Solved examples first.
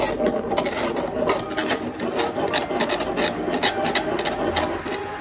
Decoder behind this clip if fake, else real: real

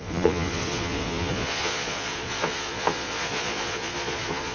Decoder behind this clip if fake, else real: fake, vocoder, Vocos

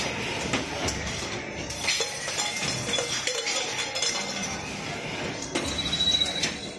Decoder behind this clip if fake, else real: real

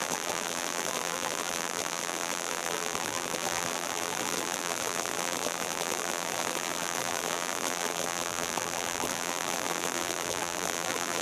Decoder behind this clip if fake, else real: fake, vocoder, BigVGAN v2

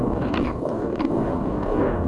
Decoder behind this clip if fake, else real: fake, codec, DAC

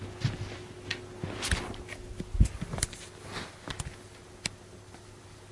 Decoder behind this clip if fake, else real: real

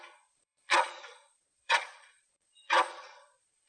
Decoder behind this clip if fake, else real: fake, vocoder, Vocos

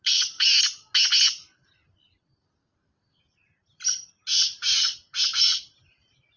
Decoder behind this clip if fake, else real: real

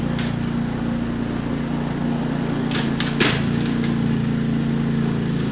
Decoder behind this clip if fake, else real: real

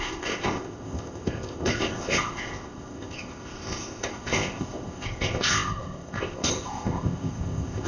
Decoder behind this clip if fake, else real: fake, codec, ZipCodec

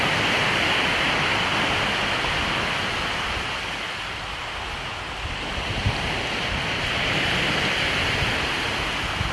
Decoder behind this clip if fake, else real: real